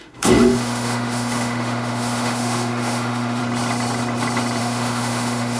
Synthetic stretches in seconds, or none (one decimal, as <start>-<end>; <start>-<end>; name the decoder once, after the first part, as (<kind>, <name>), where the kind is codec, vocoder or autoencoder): 0.0-3.4 (autoencoder, DAC-VAE); 4.6-5.6